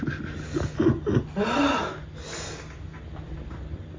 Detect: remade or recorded recorded